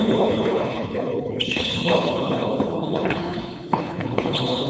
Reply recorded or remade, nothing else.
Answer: remade